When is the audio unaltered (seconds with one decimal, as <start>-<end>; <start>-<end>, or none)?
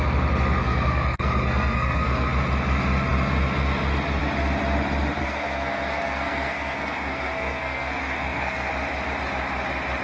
0.0-0.6; 2.3-5.2; 8.7-10.0